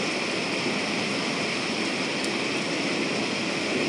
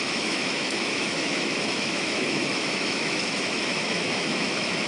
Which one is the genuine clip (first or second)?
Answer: first